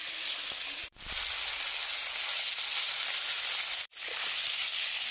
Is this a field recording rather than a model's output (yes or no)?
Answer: yes